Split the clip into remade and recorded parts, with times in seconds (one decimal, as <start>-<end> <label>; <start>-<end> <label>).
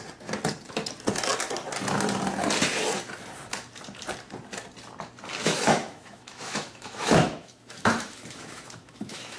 0.0-5.4 recorded; 5.4-9.4 remade